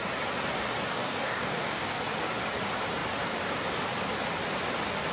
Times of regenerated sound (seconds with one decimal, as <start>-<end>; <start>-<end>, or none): 0.9-2.0